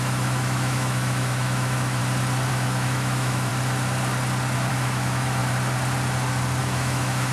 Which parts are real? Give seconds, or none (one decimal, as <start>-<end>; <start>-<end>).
2.0-2.5; 3.5-4.7; 5.4-6.6